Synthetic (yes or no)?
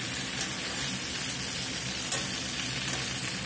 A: no